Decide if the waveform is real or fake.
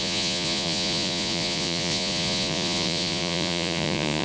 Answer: fake